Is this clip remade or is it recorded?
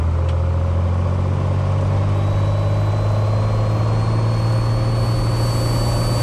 recorded